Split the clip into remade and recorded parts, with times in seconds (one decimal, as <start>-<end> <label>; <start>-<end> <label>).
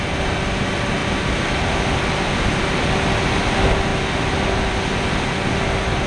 0.0-6.1 recorded